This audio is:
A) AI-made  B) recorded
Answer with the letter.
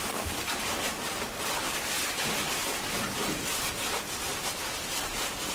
A